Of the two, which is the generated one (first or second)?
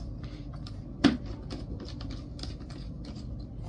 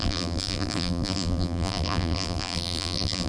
second